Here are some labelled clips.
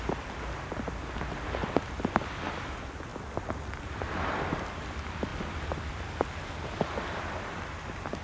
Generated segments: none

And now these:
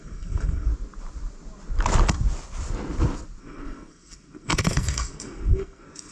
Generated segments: 0.0-0.7 (codec, SNAC); 3.4-6.1

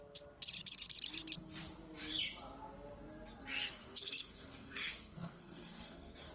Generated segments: 3.5-6.3 (codec, SNAC)

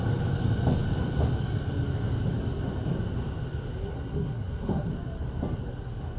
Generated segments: 3.8-4.9 (codec, SNAC)

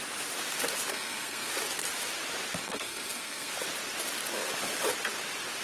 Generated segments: 0.9-1.5 (codec, SNAC); 2.6-3.5

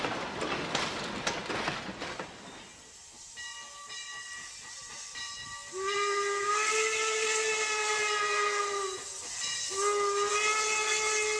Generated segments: none

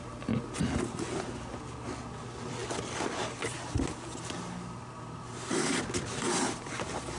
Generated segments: none